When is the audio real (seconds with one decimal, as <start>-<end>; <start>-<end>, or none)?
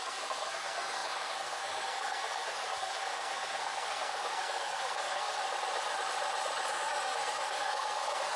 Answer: 5.4-6.7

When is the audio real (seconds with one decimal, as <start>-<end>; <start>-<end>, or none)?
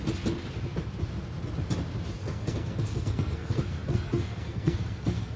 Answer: 0.0-2.2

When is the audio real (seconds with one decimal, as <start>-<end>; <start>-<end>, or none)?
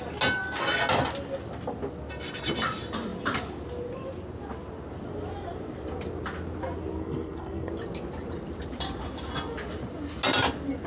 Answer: 0.0-7.0; 7.7-10.9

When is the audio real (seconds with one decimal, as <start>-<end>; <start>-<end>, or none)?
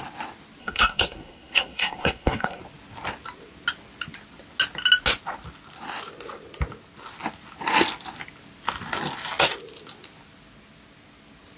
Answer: 0.0-0.6; 2.6-11.6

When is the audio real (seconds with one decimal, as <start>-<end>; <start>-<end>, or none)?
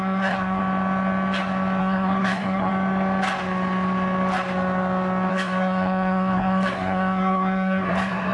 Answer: 0.6-1.8; 2.7-5.3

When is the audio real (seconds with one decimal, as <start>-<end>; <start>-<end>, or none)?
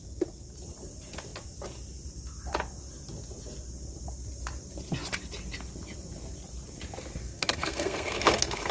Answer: 0.0-7.2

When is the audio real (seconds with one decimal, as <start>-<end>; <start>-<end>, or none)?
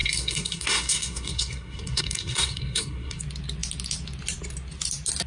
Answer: 3.2-5.3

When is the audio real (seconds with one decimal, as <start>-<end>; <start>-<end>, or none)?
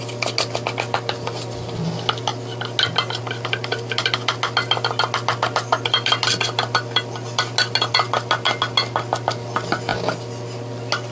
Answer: 0.0-11.1